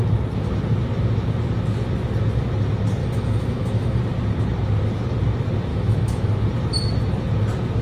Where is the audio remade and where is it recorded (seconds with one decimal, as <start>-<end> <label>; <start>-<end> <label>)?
0.0-3.0 recorded; 3.0-4.0 remade; 4.0-5.7 recorded; 5.7-6.3 remade; 6.3-7.8 recorded